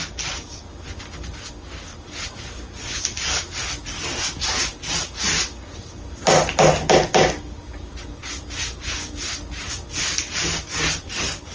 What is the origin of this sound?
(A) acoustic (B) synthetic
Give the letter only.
A